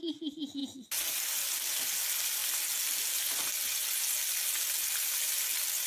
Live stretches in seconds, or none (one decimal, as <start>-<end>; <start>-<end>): 0.0-5.9